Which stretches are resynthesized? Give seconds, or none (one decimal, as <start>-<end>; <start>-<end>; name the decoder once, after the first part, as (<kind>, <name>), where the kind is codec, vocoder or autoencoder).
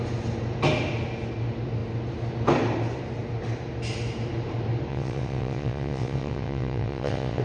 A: 4.9-7.4 (vocoder, WaveNeXt)